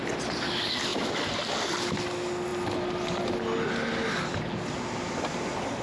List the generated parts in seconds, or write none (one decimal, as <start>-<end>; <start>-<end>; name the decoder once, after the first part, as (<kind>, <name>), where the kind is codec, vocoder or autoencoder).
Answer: none